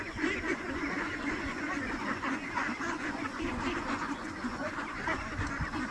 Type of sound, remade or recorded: remade